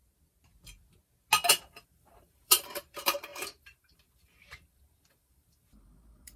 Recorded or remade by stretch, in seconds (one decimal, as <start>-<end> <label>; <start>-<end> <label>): 0.0-1.5 recorded; 1.5-6.4 remade